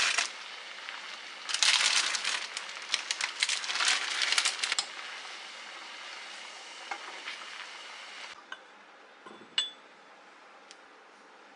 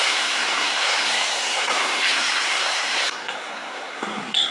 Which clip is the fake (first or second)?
second